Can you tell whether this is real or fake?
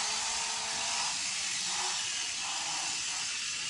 real